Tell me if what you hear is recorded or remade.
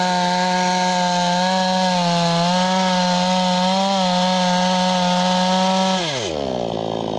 recorded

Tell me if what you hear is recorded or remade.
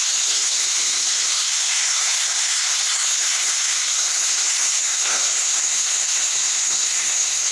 remade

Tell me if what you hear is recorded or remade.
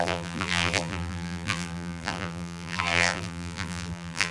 remade